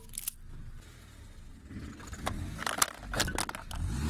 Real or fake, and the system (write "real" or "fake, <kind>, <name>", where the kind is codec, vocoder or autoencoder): real